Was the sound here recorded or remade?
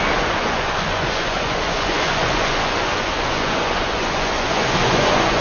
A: remade